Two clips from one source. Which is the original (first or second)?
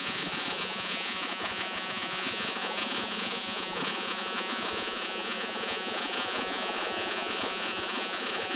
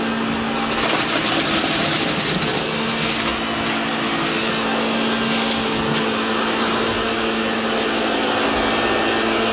second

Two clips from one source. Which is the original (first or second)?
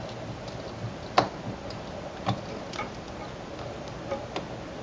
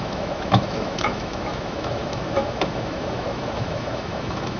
first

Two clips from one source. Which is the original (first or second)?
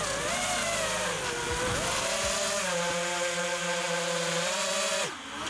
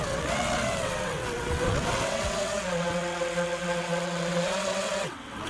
first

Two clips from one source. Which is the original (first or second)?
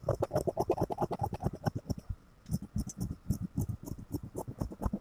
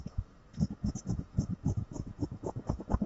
first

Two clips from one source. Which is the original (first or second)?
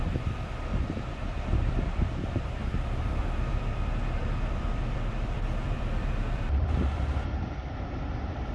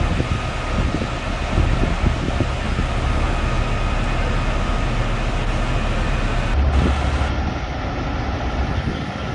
second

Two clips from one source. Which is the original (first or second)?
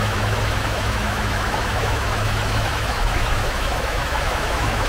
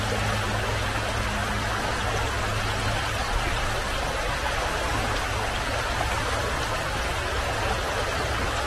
second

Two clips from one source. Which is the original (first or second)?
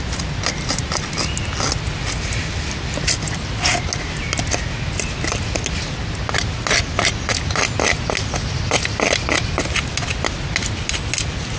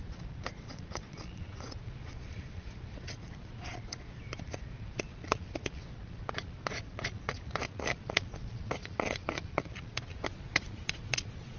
first